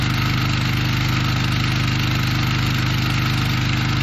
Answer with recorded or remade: recorded